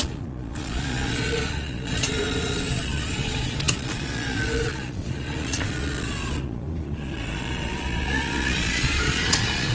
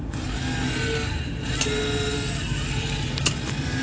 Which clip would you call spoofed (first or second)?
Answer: first